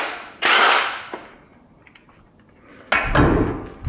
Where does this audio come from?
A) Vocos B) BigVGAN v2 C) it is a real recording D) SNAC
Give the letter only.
C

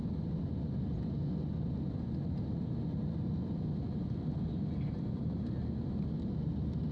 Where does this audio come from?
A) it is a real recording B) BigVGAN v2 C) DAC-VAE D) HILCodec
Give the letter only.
A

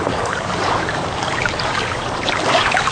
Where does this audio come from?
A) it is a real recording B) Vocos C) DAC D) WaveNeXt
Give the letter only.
C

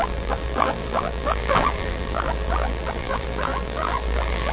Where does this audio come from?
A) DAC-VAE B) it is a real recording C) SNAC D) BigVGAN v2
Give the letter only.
D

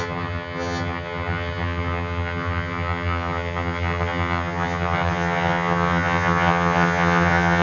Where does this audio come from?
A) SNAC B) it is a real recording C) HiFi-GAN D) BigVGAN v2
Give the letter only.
C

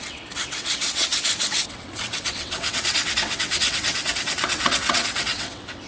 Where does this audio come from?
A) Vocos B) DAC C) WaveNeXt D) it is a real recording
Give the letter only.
C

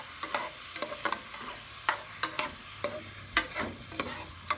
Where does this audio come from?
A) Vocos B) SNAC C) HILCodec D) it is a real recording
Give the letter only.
D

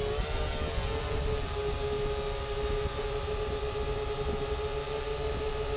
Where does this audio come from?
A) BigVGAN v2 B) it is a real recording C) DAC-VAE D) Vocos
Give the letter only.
B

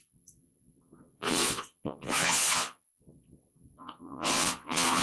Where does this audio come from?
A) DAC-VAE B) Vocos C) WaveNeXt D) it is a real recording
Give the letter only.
B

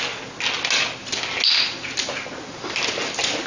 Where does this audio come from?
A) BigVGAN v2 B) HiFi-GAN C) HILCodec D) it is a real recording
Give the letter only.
D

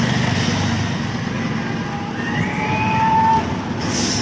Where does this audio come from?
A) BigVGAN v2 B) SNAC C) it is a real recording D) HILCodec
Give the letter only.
C